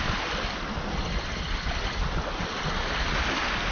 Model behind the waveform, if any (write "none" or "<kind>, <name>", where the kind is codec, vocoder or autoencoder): none